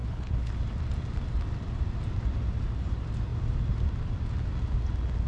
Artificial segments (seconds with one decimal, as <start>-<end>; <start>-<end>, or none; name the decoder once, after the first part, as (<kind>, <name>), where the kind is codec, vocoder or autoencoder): 0.0-0.5 (codec, HILCodec)